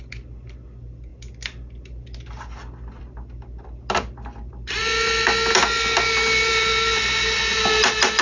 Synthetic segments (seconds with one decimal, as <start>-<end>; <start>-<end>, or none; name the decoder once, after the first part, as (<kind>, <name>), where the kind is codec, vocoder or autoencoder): none